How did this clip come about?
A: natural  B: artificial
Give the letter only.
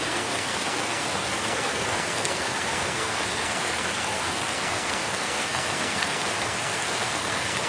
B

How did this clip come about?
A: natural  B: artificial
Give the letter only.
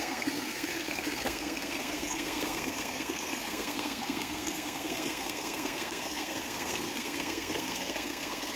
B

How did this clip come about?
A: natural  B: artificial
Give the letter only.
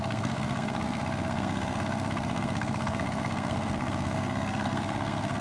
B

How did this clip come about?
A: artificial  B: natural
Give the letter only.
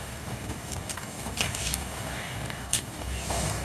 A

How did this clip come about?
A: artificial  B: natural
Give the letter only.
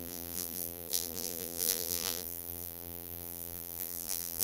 A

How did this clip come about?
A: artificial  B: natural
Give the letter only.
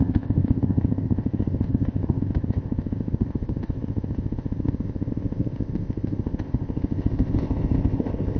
A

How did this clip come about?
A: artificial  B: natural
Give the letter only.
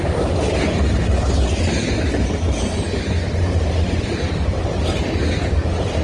B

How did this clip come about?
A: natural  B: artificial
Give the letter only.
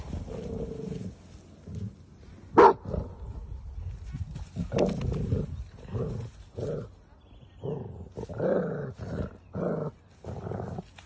A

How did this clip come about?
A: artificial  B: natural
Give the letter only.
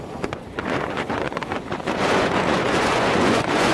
A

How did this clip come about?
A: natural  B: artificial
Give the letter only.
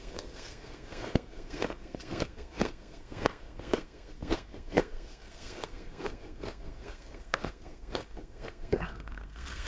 B